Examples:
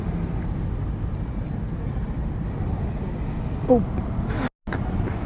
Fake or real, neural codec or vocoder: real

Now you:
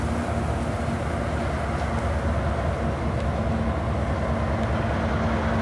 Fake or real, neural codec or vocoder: real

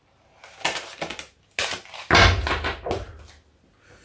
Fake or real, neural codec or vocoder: real